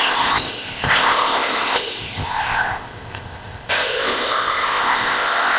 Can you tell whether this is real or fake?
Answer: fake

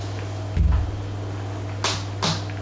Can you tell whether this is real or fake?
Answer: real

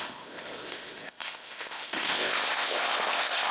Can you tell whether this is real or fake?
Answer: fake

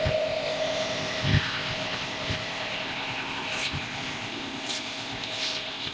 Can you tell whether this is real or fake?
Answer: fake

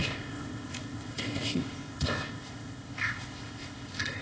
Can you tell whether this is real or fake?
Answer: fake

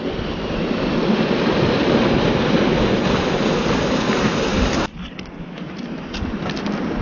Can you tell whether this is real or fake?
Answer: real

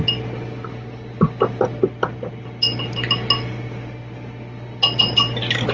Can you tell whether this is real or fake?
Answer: real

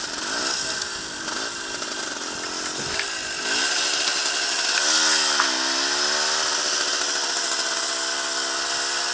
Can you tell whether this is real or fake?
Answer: real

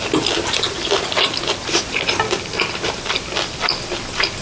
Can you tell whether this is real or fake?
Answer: real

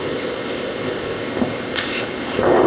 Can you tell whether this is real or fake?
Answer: fake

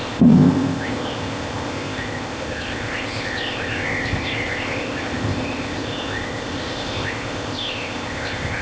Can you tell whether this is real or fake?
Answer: fake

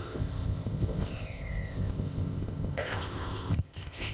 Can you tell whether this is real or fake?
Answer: fake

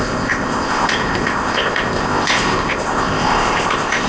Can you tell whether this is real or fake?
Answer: fake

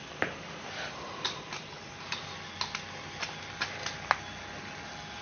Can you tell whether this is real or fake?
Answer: real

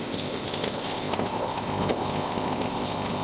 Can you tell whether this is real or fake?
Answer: fake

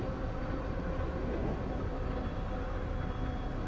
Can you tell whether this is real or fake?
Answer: real